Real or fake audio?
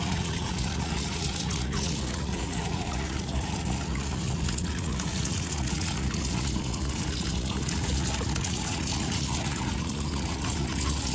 fake